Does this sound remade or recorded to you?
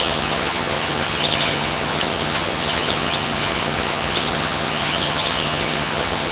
remade